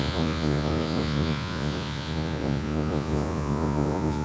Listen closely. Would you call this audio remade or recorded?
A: remade